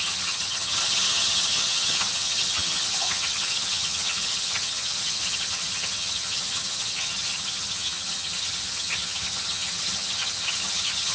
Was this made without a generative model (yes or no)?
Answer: no